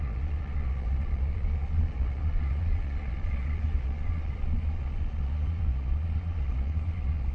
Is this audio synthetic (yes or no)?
yes